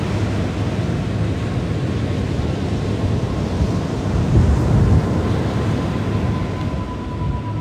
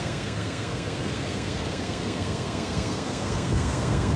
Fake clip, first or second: second